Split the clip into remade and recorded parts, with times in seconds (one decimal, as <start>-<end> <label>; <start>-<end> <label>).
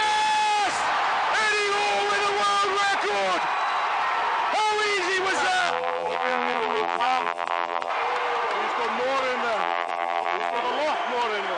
0.0-5.6 recorded; 5.6-7.9 remade; 7.9-9.6 recorded; 9.6-10.6 remade; 10.6-11.6 recorded